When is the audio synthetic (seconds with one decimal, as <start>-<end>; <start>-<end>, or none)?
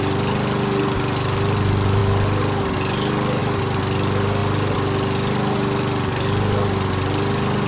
none